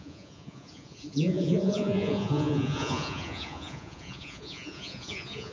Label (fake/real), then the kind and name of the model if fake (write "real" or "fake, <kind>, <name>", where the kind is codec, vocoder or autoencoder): fake, vocoder, Vocos